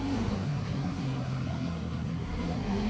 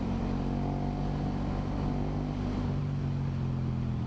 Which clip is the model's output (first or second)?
first